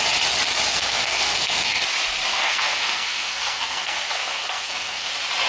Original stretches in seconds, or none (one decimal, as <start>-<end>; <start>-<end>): 0.0-0.7; 1.8-2.3; 5.1-5.5

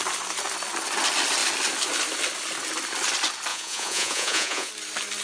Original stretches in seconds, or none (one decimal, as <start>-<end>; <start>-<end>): 0.0-3.5; 4.7-5.2

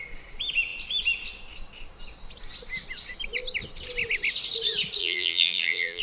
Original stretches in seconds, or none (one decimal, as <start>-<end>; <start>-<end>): 0.0-5.0